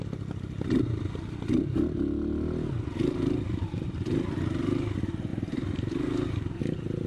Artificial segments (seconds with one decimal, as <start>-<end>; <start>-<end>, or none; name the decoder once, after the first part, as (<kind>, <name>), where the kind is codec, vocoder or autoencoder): 5.3-6.6 (vocoder, BigVGAN v2)